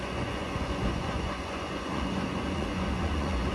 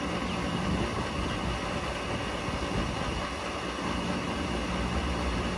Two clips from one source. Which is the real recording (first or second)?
second